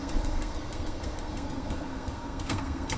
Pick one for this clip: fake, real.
fake